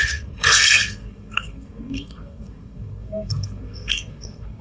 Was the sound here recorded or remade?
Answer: remade